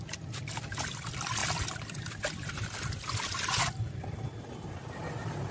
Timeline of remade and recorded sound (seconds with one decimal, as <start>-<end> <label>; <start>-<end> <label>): 0.0-5.5 recorded